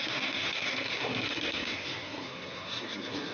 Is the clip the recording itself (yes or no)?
no